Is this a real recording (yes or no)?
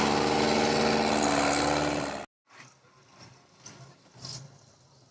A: yes